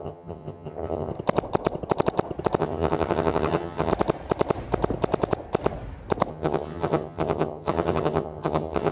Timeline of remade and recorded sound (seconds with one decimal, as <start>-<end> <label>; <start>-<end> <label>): 0.0-1.1 remade; 1.1-2.6 recorded; 2.6-3.9 remade; 3.9-6.3 recorded; 6.3-8.9 remade